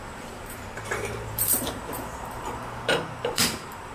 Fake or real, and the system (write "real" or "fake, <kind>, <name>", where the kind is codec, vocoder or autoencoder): fake, vocoder, BigVGAN v2